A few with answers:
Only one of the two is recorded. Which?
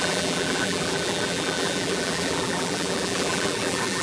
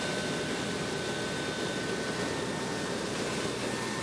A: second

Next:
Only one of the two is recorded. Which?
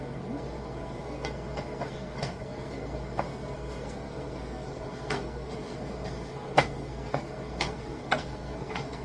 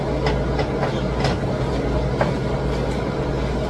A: second